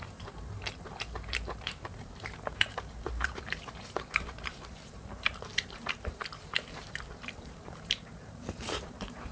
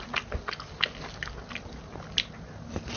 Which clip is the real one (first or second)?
second